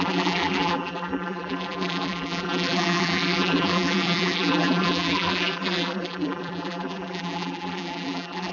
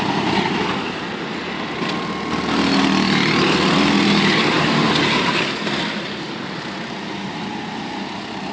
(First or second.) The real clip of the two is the second